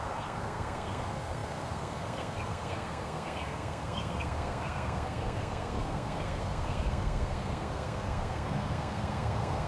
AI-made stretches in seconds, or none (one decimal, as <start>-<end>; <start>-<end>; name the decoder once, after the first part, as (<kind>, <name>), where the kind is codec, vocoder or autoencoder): 0.0-9.7 (codec, SNAC)